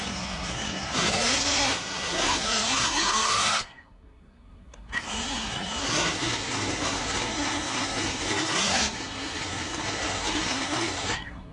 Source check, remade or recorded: remade